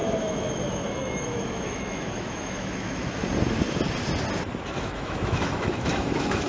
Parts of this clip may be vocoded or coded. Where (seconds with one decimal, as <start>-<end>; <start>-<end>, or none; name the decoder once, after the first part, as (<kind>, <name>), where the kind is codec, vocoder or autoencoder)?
0.0-3.2 (autoencoder, DAC-VAE); 4.8-6.5